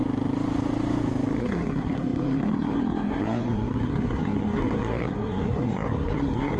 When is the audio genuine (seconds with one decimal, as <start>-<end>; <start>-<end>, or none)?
0.0-1.4